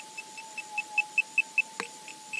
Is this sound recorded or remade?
recorded